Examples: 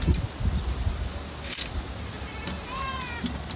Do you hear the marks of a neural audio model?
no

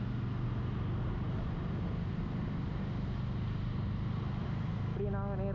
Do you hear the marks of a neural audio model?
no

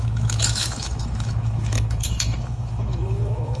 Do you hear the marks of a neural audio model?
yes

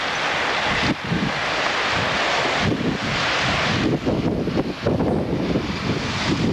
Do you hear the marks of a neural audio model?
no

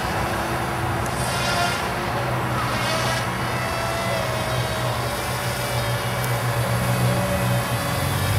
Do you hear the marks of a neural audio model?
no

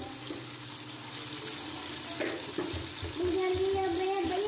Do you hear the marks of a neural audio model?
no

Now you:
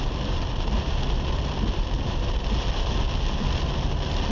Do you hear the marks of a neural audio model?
no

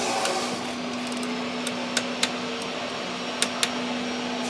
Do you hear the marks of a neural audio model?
no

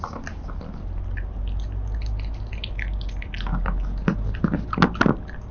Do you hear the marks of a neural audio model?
no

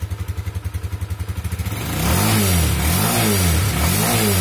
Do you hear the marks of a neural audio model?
no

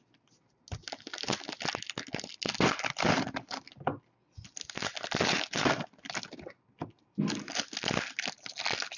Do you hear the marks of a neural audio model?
no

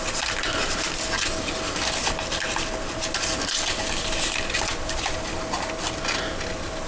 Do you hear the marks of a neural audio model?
no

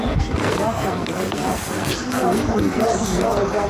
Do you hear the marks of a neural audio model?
yes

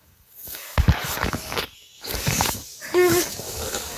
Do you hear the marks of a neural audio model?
yes